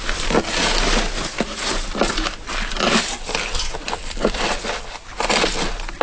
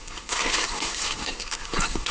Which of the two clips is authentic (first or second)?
first